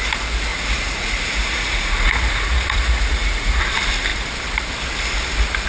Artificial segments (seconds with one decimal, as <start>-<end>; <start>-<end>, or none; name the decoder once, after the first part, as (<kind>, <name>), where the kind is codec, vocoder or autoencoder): 0.5-3.6 (vocoder, Vocos)